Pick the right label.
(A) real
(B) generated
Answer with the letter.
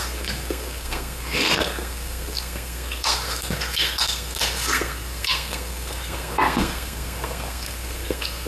B